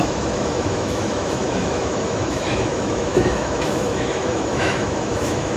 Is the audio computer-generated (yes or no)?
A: yes